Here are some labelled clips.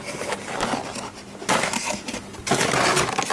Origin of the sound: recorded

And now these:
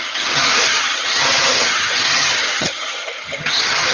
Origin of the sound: remade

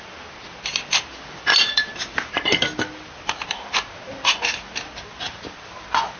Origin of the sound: recorded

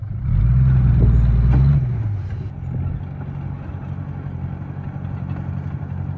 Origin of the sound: recorded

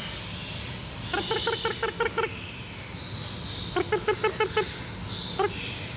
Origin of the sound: recorded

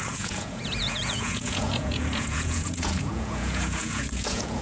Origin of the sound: remade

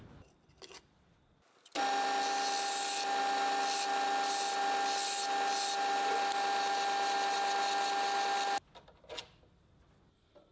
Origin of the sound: recorded